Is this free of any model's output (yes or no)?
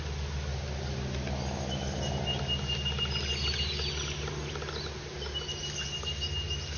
yes